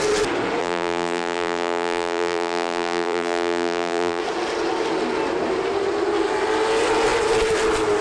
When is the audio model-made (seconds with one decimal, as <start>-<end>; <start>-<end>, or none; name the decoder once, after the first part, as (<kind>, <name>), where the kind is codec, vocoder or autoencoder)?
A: 0.6-4.2 (vocoder, BigVGAN v2)